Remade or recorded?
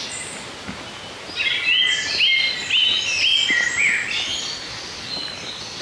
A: recorded